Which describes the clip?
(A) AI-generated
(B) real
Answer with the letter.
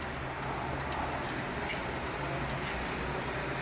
B